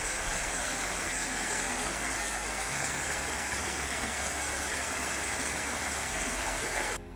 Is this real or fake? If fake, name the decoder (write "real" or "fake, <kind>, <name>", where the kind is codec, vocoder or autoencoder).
fake, codec, SNAC